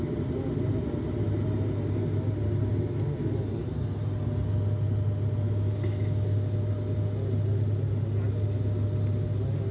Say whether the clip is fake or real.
real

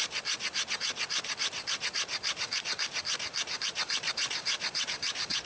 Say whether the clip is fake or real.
fake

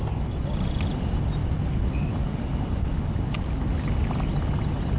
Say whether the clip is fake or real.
real